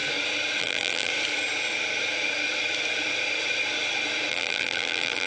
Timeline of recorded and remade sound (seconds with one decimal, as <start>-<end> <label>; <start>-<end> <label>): 0.0-0.6 recorded; 0.6-1.1 remade; 1.1-4.3 recorded; 4.3-5.3 remade